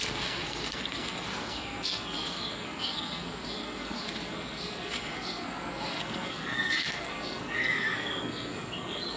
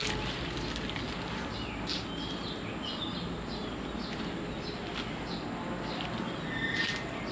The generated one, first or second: first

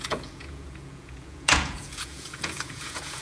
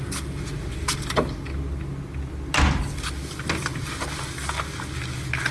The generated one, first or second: first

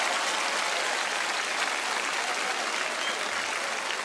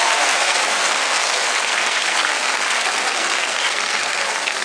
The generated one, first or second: second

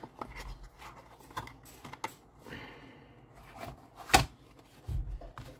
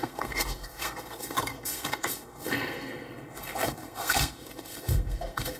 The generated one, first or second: second